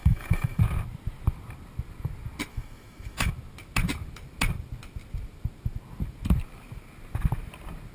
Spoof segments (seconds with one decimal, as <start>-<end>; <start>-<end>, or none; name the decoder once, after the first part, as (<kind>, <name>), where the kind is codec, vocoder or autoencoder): 0.0-0.6 (autoencoder, DAC-VAE); 2.5-3.3